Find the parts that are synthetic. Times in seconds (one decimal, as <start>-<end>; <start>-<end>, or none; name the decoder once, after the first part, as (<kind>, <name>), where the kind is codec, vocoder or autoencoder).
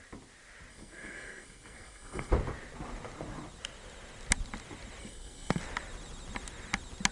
0.7-2.3 (codec, SNAC); 5.0-5.6